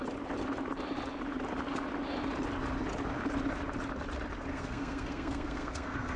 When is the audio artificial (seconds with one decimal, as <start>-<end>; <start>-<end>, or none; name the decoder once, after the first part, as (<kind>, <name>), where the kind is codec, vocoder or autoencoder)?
4.5-6.2 (codec, SNAC)